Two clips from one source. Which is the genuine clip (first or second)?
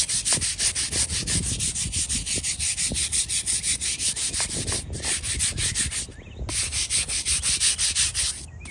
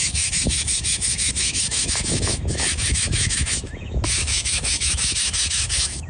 first